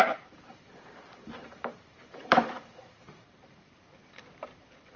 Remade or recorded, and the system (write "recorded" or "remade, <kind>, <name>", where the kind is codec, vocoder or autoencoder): remade, vocoder, BigVGAN v2